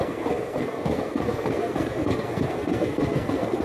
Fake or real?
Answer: fake